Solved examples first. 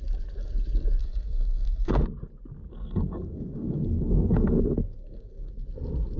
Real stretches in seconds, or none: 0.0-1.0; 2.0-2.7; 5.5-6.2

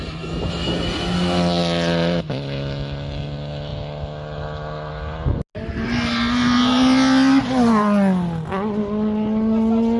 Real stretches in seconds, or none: 0.0-10.0

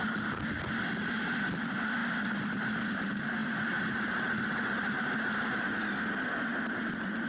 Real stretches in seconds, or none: 0.0-7.3

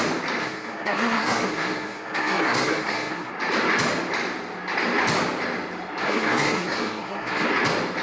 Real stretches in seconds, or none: 0.0-0.4; 3.3-6.0; 7.5-8.0